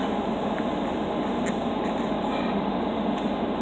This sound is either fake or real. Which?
real